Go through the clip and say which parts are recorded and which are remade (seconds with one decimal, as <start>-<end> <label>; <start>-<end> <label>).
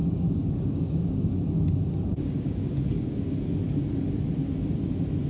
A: 0.0-3.2 remade; 3.2-5.3 recorded